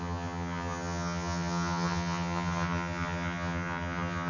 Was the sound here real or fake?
fake